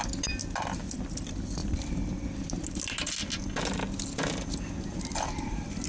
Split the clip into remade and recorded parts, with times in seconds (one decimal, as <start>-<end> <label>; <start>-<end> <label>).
0.0-5.9 recorded